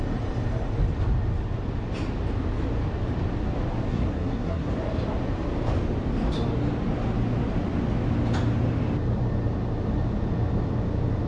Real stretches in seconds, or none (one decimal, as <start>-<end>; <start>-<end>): 0.0-3.9; 4.7-11.3